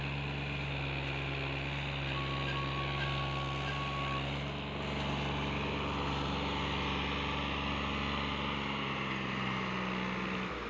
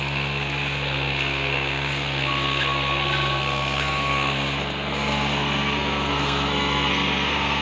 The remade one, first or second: second